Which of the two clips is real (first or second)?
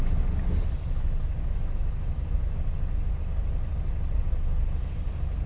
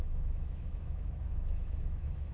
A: first